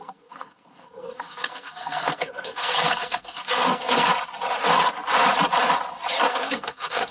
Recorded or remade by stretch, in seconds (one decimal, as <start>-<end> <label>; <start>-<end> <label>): 0.0-4.1 remade; 4.1-6.3 recorded; 6.3-7.1 remade